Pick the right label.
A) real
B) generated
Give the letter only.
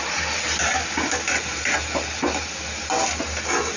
A